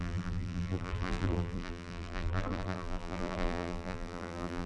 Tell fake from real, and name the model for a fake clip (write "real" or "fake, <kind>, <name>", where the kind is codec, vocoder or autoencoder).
fake, vocoder, BigVGAN v2